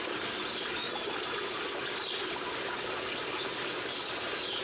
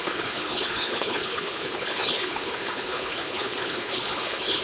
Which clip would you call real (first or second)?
first